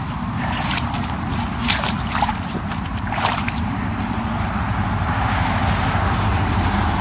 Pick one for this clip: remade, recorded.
remade